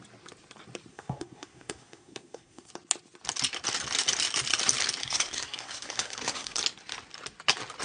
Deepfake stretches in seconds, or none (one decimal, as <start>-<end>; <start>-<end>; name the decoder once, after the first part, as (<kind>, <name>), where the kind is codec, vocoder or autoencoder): 0.9-2.7 (codec, SNAC); 5.0-6.6